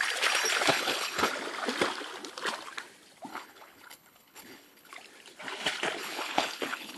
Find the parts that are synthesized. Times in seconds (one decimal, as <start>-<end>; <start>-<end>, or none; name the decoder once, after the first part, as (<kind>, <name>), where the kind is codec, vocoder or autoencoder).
0.7-1.3 (codec, HILCodec); 3.3-4.9; 6.0-7.0